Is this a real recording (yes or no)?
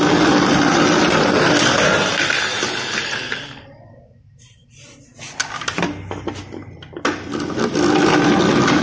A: yes